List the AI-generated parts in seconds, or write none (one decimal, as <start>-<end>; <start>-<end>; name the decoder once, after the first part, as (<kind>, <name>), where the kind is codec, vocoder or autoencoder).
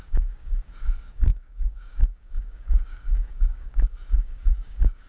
0.0-5.1 (codec, DAC)